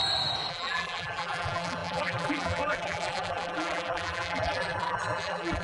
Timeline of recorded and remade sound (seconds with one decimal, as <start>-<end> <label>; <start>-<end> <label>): 0.0-0.5 recorded; 0.5-5.6 remade